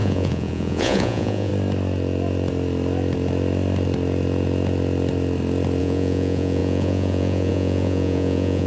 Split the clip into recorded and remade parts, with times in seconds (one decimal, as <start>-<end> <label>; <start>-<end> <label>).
0.0-1.5 remade; 1.5-5.8 recorded; 5.8-8.7 remade